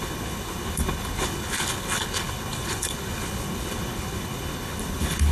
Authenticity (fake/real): fake